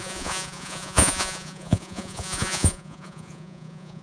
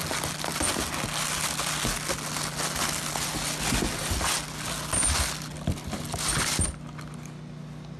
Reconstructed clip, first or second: first